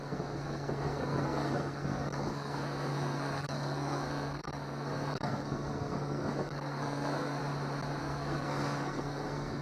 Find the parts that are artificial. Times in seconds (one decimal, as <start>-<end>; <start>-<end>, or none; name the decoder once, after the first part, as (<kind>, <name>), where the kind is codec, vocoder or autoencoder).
0.0-7.4 (codec, SNAC); 8.0-9.6